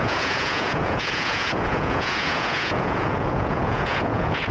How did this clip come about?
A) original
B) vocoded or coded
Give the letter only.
B